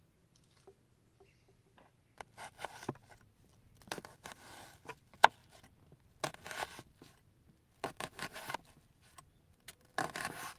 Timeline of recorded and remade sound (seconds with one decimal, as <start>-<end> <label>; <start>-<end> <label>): 0.0-10.6 recorded